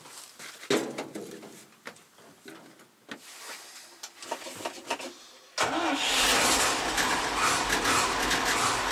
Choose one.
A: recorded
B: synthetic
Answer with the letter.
A